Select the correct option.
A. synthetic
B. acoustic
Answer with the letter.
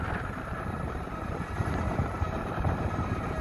B